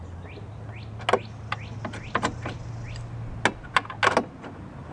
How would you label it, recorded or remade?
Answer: recorded